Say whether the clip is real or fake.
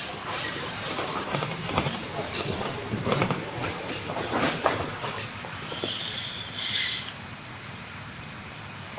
fake